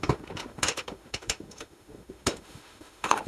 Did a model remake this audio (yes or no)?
yes